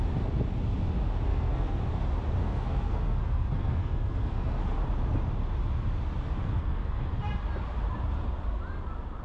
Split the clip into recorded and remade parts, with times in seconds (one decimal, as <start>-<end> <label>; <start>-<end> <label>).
0.0-1.3 recorded; 1.3-1.8 remade; 1.8-2.4 recorded; 2.4-4.6 remade; 4.6-6.4 recorded; 6.4-7.1 remade; 7.1-9.2 recorded